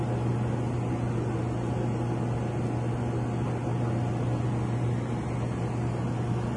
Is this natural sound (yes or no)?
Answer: yes